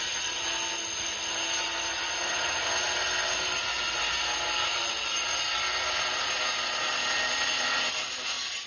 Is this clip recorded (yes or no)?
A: yes